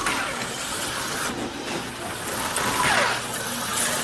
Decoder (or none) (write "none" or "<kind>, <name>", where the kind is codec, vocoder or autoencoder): none